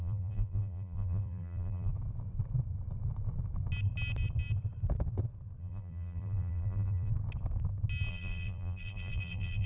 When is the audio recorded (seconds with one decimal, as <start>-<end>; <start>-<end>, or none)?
1.9-5.6; 7.1-8.1